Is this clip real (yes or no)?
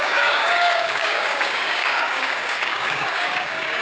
no